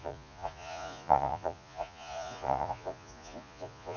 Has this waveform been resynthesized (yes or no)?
yes